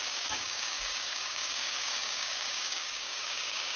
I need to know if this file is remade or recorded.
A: remade